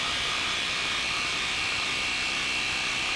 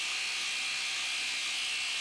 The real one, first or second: second